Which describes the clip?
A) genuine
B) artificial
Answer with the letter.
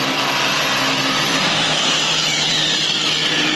B